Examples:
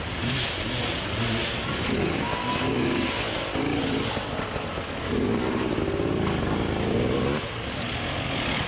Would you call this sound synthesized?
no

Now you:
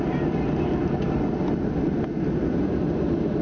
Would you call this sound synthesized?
no